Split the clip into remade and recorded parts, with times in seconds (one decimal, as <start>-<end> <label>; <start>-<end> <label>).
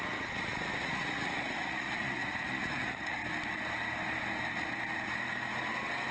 0.0-3.2 remade; 3.2-6.1 recorded